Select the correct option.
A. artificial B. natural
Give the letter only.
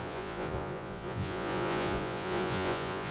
A